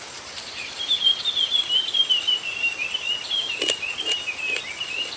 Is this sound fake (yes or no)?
no